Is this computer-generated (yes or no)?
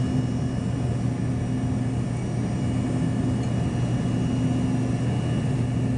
no